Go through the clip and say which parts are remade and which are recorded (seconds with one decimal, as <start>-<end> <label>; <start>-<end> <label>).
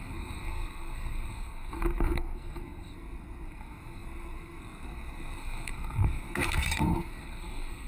0.0-7.9 remade